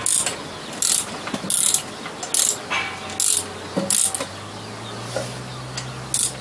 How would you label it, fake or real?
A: real